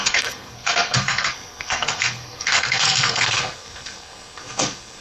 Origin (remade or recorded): remade